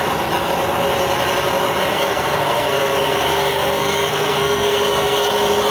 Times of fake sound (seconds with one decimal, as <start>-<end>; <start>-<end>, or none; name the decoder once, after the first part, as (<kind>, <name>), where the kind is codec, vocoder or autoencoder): 1.9-5.3 (codec, SNAC)